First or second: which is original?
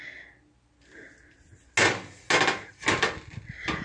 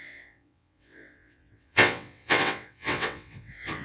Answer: first